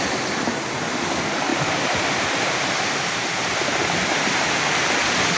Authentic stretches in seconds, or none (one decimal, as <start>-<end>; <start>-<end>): 0.0-4.0; 4.8-5.4